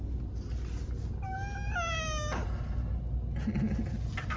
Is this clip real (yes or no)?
yes